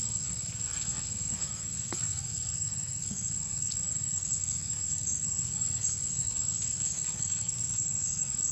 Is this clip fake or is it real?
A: fake